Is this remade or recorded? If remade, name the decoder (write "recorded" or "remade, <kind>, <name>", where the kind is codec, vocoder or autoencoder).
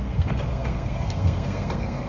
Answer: remade, codec, SNAC